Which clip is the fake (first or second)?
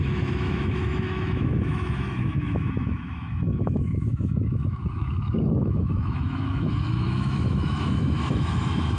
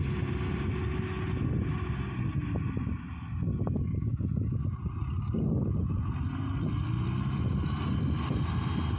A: first